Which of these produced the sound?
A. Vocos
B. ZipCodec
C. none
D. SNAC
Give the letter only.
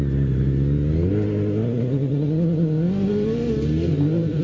C